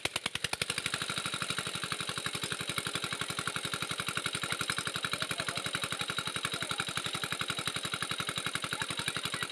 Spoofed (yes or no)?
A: no